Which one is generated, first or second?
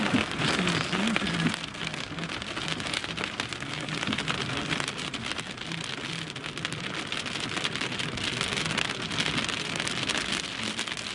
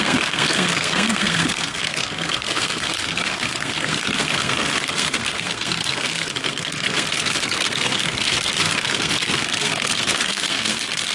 second